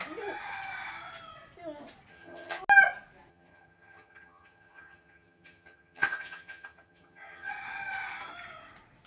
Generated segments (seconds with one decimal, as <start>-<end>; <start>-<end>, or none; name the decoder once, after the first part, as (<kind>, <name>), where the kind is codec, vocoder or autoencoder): 2.1-2.6 (vocoder, HiFi-GAN); 3.3-7.5